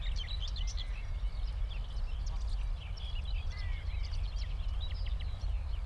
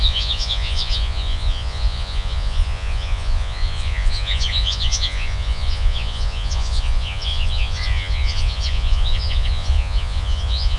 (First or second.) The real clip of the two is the first